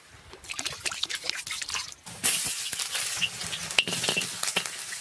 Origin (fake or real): real